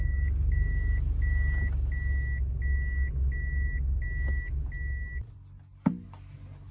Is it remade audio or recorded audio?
recorded